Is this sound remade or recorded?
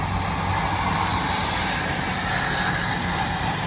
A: recorded